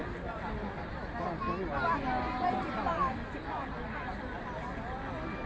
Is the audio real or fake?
real